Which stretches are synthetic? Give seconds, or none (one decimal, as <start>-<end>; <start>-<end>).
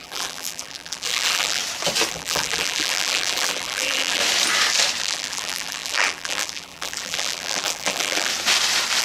0.0-1.6; 2.1-4.2; 5.0-8.3